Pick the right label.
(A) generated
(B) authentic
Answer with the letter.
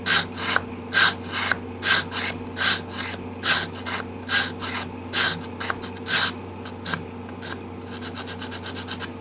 B